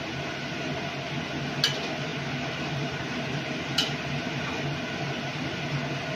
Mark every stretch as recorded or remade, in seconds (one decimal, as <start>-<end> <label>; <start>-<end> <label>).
0.0-6.2 recorded